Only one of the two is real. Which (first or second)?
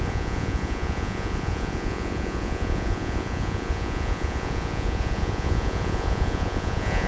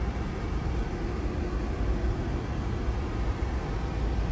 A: second